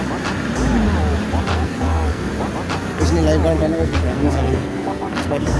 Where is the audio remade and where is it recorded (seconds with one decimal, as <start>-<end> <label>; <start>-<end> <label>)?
0.0-1.5 recorded; 1.5-2.3 remade; 2.3-3.5 recorded; 3.5-5.6 remade